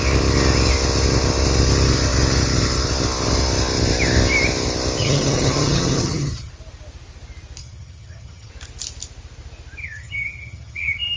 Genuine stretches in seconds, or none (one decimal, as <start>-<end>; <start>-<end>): 0.0-5.0; 6.5-7.6; 8.5-9.8